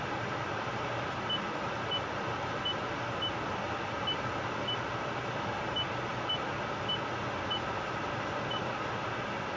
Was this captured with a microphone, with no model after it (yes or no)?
yes